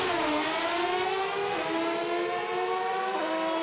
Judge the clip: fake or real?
real